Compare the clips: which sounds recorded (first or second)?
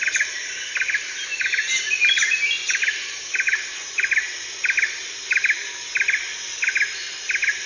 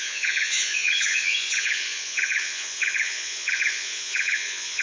first